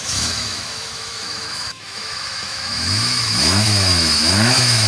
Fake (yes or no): yes